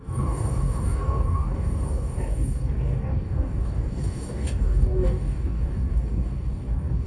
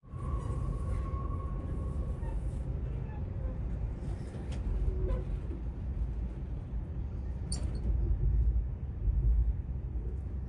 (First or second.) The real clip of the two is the second